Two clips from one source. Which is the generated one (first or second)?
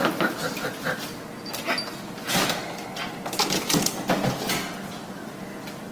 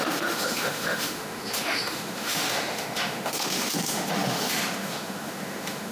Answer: second